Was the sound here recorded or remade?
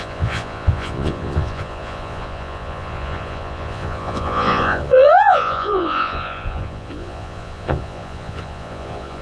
remade